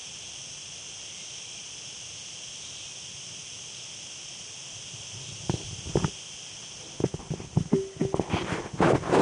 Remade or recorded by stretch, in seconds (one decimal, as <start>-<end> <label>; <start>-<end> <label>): 0.0-9.2 recorded